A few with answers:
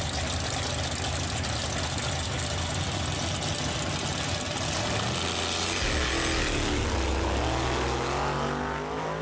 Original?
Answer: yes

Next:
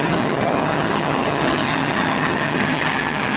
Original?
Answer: no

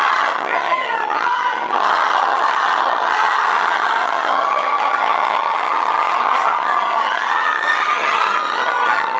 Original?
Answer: no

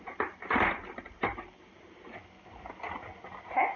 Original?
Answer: yes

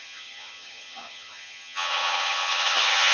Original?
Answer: no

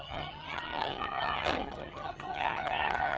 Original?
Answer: no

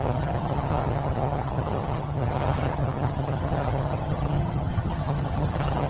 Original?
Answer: no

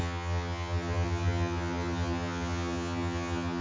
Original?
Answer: no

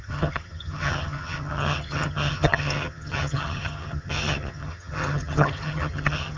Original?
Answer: no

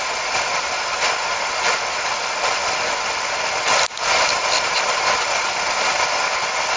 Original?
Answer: yes